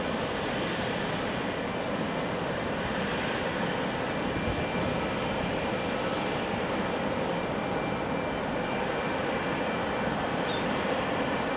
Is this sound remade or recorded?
recorded